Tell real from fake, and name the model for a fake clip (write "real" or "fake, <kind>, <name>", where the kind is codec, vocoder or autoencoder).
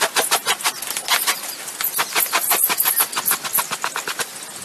real